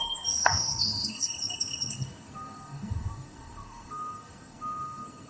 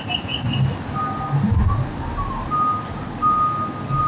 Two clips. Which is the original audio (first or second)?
second